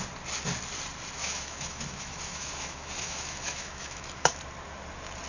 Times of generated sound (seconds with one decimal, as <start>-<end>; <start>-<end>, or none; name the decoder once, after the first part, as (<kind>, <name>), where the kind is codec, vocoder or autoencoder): 1.2-4.4 (autoencoder, DAC-VAE)